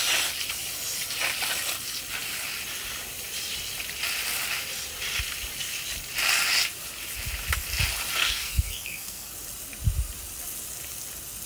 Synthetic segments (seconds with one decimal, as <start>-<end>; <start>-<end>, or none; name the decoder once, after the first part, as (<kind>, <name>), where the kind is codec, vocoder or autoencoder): 8.2-9.3 (codec, SNAC)